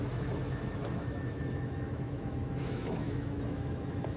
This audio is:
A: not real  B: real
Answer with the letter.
A